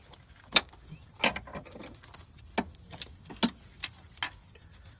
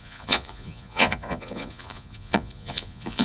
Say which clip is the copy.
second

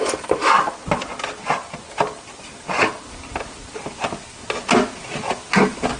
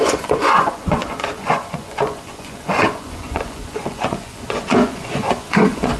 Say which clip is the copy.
second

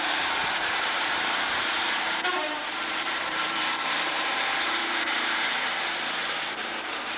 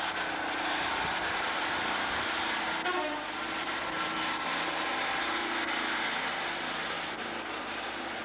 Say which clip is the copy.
first